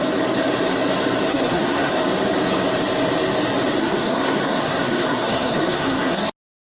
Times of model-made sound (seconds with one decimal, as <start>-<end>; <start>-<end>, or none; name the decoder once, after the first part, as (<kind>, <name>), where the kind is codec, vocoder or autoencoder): 1.3-1.9 (codec, SNAC); 3.8-6.3